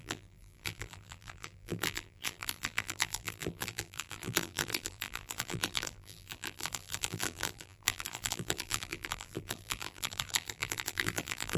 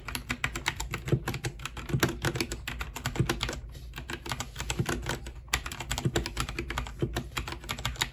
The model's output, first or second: first